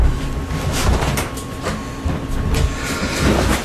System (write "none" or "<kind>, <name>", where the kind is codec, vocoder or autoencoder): none